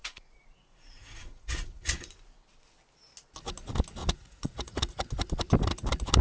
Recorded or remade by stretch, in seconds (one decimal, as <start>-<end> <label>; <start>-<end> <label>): 0.0-2.1 remade; 2.1-4.0 recorded; 4.0-4.9 remade; 4.9-6.2 recorded